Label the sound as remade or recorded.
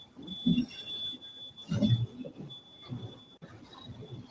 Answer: recorded